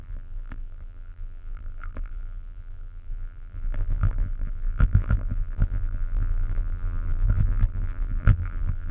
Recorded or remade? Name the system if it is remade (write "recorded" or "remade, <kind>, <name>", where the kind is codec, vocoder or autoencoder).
remade, vocoder, BigVGAN v2